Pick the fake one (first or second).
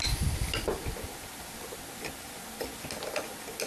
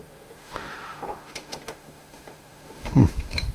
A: second